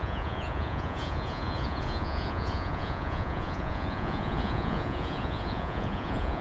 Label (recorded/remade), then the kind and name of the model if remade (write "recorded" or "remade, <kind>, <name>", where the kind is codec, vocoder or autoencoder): remade, vocoder, Vocos